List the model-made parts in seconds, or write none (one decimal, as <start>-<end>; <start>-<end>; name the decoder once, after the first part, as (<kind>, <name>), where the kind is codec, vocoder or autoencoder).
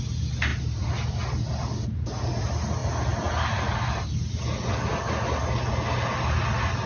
0.5-1.1 (vocoder, BigVGAN v2)